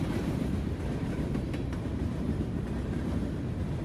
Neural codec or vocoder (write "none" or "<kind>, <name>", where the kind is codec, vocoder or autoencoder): none